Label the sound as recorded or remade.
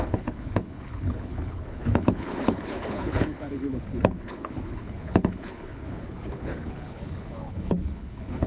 remade